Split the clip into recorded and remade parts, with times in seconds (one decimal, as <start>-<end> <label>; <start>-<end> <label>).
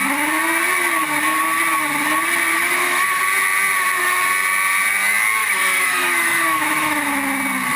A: 0.0-2.5 recorded; 2.5-3.2 remade; 3.2-5.4 recorded; 5.4-7.1 remade; 7.1-7.8 recorded